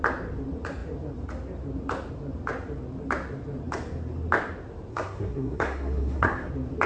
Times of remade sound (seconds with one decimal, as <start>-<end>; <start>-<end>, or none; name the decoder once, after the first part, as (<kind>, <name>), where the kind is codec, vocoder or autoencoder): 4.9-6.5 (codec, SNAC)